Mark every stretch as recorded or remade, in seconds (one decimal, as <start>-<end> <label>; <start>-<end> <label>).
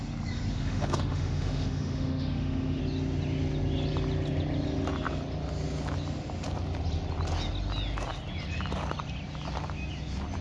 0.0-0.5 recorded; 0.5-2.8 remade; 2.8-10.4 recorded